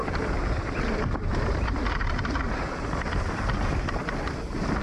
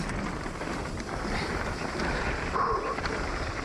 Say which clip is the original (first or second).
first